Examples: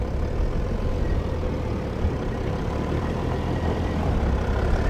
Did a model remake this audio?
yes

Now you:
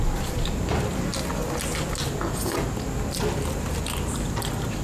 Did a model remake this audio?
no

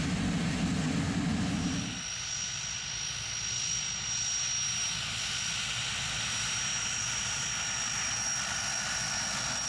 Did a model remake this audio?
no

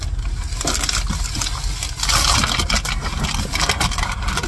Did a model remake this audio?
no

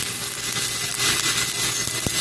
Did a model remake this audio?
yes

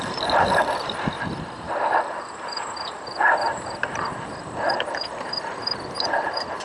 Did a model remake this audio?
yes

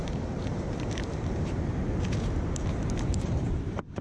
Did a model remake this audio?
yes